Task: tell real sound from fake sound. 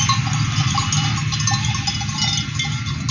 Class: real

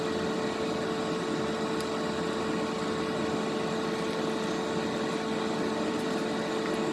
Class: real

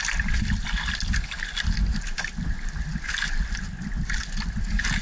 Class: real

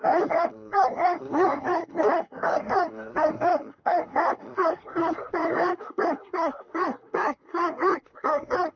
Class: fake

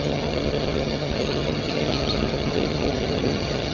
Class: fake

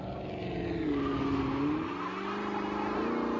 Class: real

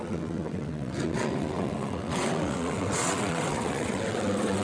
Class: fake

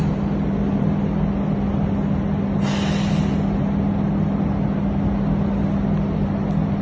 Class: real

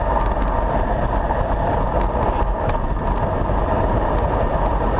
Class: real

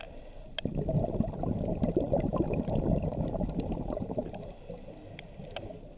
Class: real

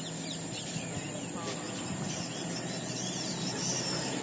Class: real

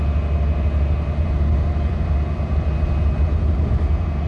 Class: real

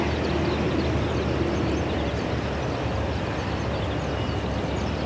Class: real